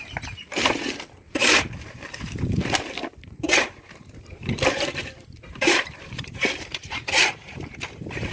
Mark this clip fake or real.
fake